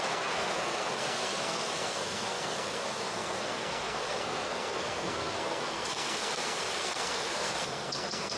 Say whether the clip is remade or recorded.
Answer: remade